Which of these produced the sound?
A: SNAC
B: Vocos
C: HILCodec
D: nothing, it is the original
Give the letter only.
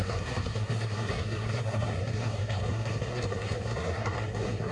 A